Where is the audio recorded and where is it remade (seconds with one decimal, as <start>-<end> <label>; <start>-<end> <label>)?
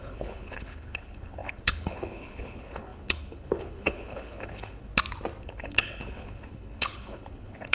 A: 0.0-4.9 remade; 4.9-5.4 recorded; 5.4-7.7 remade